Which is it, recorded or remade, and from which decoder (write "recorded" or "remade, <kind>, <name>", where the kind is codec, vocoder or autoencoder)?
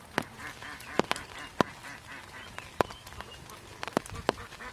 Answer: recorded